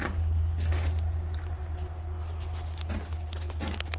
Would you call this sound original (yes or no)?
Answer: yes